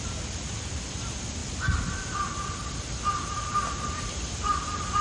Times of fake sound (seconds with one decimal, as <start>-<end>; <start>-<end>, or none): 0.0-1.4; 3.8-5.0